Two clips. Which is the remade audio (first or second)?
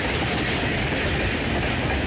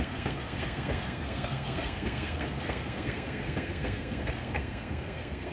second